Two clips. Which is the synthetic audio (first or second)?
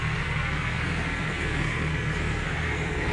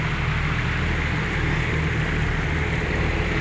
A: first